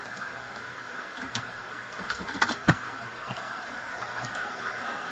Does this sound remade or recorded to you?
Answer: remade